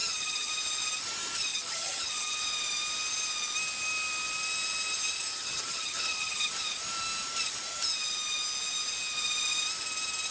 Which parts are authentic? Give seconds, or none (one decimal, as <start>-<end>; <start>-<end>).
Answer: 0.5-1.5; 2.4-5.3; 6.5-10.3